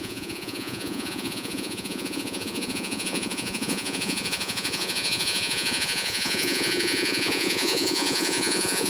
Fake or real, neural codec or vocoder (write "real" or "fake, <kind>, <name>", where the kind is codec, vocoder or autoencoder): fake, vocoder, Vocos